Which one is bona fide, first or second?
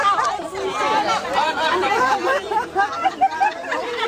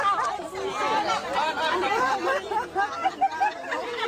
second